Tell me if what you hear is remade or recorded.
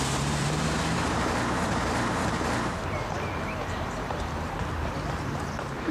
remade